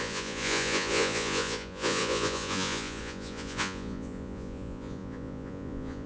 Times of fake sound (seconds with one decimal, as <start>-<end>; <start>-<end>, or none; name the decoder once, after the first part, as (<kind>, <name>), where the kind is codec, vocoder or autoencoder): 0.0-6.1 (vocoder, Vocos)